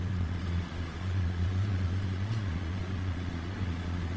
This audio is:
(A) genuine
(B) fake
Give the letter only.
B